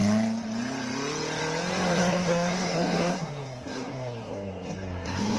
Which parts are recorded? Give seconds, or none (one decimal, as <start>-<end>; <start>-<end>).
0.0-1.9